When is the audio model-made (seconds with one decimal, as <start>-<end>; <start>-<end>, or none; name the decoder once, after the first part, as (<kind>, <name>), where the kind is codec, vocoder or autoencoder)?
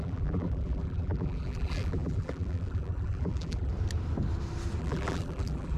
0.0-3.7 (vocoder, BigVGAN v2); 4.8-5.8